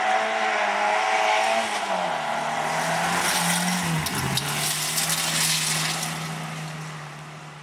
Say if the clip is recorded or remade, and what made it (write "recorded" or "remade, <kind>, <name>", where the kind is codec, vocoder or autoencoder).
recorded